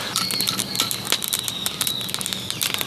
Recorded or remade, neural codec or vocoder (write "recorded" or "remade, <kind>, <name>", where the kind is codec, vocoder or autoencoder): recorded